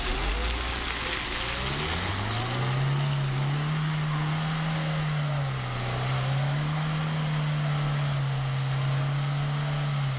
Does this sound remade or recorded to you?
recorded